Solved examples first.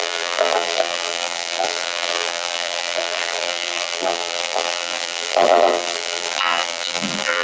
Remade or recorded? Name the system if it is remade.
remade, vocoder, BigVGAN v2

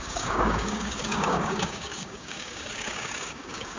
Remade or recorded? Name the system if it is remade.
remade, codec, DAC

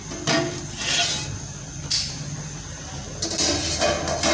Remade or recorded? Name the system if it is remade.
recorded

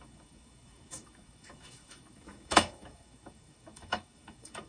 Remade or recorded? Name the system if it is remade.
remade, autoencoder, DAC-VAE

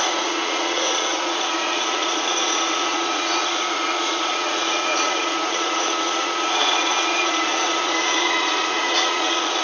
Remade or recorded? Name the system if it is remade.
remade, vocoder, Vocos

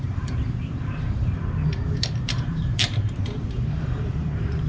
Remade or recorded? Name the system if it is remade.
remade, vocoder, BigVGAN v2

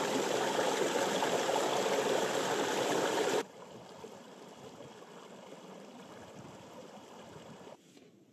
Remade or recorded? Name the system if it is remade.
remade, vocoder, BigVGAN v2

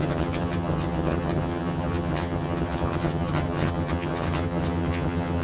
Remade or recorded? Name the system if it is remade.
remade, vocoder, HiFi-GAN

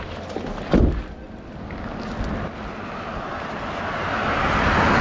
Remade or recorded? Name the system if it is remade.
recorded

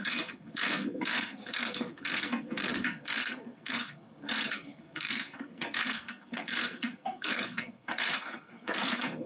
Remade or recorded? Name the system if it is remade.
remade, codec, SNAC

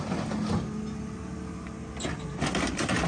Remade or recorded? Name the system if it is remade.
recorded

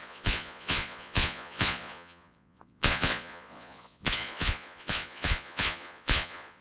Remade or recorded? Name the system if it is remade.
remade, vocoder, Vocos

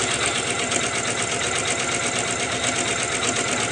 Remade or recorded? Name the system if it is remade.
recorded